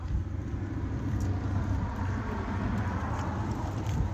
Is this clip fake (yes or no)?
no